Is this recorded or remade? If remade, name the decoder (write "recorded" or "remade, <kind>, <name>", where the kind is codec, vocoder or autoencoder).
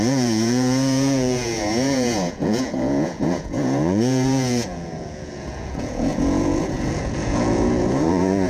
remade, vocoder, Vocos